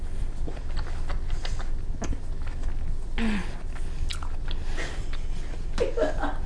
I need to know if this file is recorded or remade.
recorded